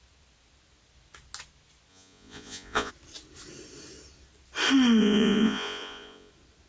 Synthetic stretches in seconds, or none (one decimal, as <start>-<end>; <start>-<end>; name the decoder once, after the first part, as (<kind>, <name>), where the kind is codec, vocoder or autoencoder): 1.9-2.9 (vocoder, Vocos); 5.0-6.3